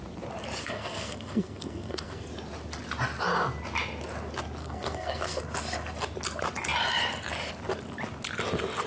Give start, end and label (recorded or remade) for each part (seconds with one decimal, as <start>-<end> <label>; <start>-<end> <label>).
0.0-0.6 recorded; 0.6-2.3 remade; 2.3-4.6 recorded; 4.6-5.4 remade; 5.4-8.9 recorded